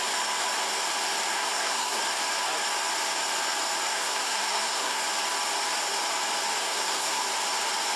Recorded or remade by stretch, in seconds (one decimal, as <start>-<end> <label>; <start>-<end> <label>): 0.0-1.3 recorded; 1.3-2.0 remade; 2.0-3.9 recorded; 3.9-5.0 remade; 5.0-6.6 recorded; 6.6-7.2 remade; 7.2-8.0 recorded